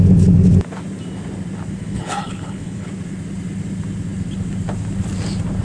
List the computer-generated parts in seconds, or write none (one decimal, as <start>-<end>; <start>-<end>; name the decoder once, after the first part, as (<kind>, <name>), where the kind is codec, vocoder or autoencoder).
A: 1.8-2.9 (codec, HILCodec)